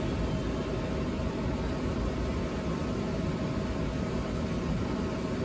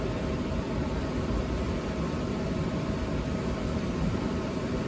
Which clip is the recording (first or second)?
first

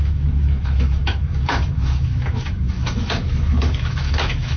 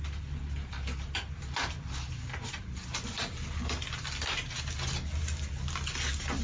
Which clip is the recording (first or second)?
second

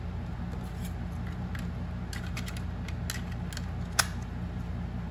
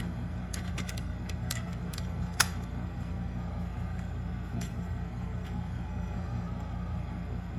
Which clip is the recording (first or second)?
first